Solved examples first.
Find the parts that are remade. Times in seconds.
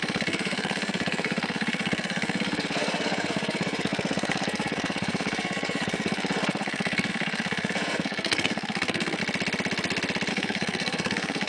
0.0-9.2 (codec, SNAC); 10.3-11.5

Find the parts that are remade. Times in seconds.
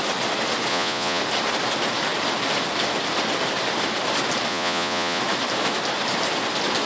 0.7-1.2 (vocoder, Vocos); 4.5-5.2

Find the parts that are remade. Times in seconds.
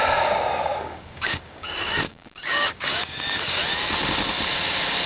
0.0-3.6 (codec, DAC)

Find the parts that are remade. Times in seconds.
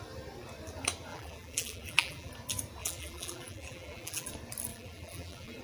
1.1-2.3 (vocoder, BigVGAN v2); 2.8-4.3; 4.7-5.6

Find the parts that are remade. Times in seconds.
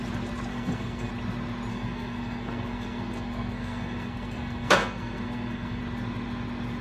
0.5-1.1 (codec, SNAC); 1.7-5.8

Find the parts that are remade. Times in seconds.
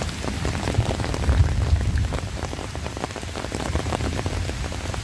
1.4-4.2 (vocoder, BigVGAN v2)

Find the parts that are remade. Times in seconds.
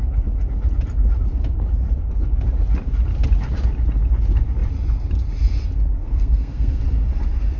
6.0-6.8 (codec, SNAC)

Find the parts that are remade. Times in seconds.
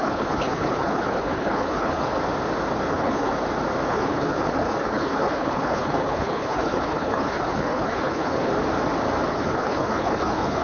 0.0-2.1 (codec, HILCodec); 2.9-3.3; 3.9-8.5; 9.3-10.6